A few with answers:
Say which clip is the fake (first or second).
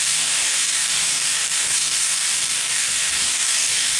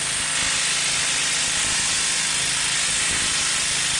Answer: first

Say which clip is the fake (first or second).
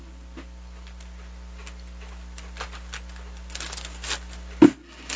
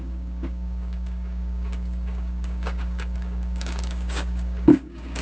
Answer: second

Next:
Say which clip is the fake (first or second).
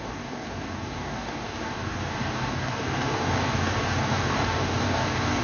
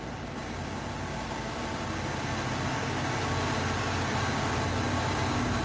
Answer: first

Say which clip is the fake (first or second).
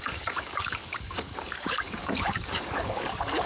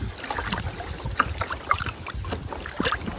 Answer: first